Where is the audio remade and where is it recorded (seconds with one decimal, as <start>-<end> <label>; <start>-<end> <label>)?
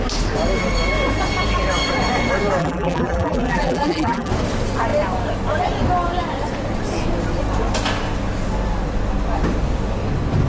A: 0.0-2.6 recorded; 2.6-4.3 remade; 4.3-10.5 recorded